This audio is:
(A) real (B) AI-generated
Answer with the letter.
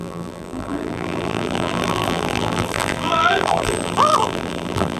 B